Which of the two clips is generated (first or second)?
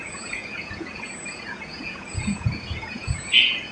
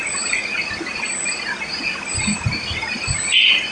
first